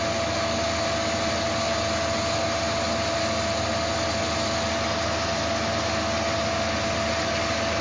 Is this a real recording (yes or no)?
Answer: yes